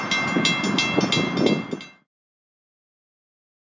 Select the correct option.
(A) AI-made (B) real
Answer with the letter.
B